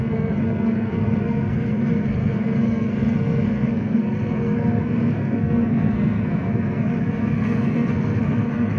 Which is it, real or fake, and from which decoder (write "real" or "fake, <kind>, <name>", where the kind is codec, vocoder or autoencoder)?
fake, codec, SNAC